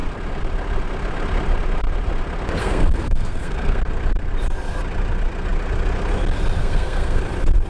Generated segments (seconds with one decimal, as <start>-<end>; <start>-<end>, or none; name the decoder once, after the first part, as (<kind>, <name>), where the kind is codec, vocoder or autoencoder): 2.6-3.8 (codec, SNAC); 6.6-7.2